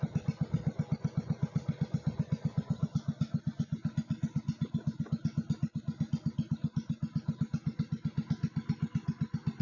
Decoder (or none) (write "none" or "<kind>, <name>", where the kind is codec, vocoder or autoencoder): none